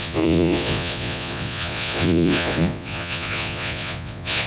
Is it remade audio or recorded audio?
remade